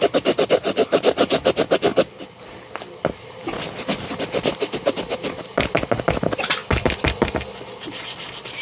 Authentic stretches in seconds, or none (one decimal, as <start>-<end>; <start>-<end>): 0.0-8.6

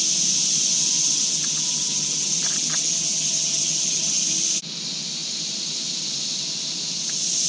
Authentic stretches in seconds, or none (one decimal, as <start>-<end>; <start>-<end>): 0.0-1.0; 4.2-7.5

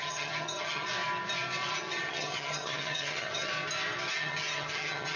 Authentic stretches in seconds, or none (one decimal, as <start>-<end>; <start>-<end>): 0.9-1.7; 3.5-4.1

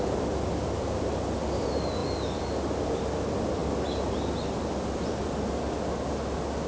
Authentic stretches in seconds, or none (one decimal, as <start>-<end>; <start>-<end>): 0.0-6.7

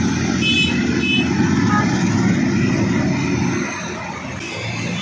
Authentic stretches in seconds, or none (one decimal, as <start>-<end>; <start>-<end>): 0.0-5.0

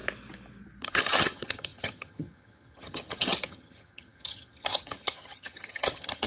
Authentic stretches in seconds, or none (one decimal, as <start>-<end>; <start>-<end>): 0.0-0.8

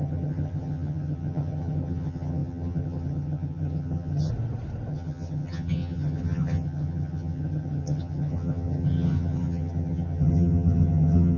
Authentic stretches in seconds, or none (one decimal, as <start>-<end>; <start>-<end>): 4.3-4.9